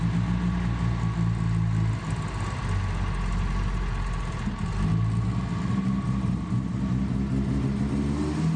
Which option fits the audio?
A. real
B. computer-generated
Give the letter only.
A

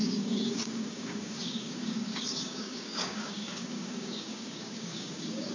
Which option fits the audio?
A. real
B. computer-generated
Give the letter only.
B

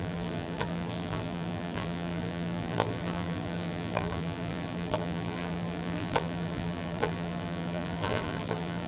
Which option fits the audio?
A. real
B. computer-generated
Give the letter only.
B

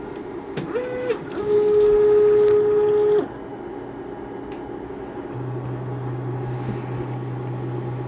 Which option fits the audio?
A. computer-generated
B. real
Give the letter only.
B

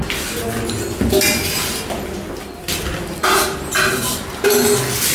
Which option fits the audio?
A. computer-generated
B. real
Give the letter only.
B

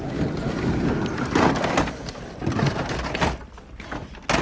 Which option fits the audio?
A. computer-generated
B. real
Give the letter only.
B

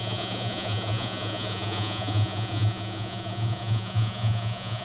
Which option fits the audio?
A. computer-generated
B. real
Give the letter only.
A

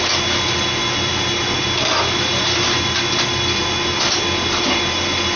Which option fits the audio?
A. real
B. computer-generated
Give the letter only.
A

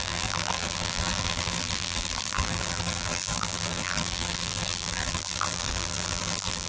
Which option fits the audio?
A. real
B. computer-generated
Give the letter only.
B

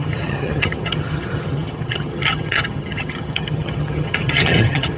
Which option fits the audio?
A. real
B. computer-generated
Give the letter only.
B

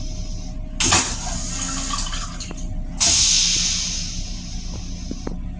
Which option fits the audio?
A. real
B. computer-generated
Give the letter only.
A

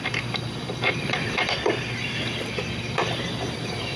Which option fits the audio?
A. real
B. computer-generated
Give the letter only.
B